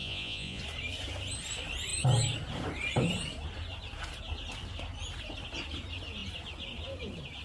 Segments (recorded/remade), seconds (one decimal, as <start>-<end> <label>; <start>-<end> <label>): 0.0-0.6 remade; 0.6-7.4 recorded